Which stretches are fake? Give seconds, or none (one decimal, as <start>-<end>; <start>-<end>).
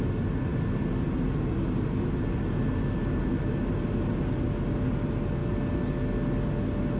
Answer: none